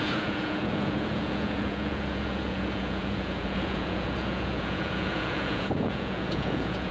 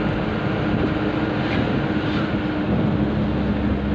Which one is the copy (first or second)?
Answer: first